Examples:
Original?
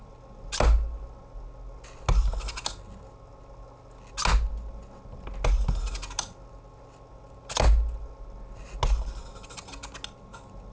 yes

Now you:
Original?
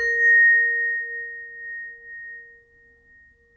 yes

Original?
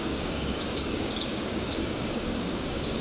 no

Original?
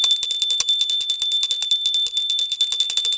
yes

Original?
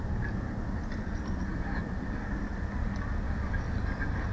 yes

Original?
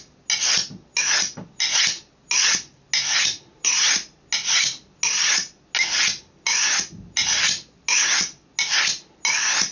yes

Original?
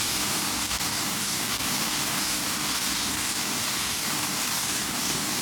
no